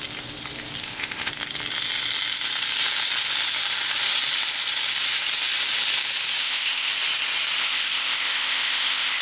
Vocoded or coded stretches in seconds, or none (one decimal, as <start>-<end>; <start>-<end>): 0.8-1.3; 6.4-6.9; 7.6-9.2